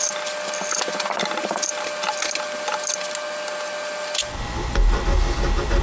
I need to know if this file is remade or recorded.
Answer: recorded